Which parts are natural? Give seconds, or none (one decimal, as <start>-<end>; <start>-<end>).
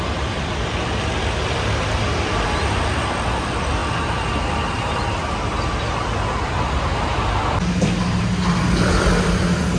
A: 0.0-9.8